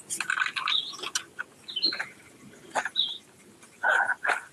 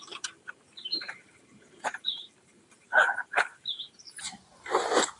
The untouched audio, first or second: first